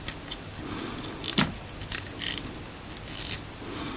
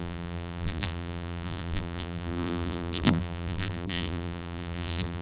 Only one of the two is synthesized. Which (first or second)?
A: second